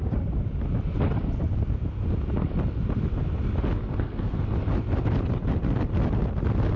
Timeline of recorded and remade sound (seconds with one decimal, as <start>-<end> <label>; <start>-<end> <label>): 0.0-3.9 recorded; 3.9-4.4 remade; 4.4-6.8 recorded